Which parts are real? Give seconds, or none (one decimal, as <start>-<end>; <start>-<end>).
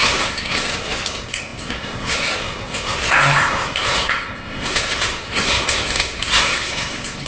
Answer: none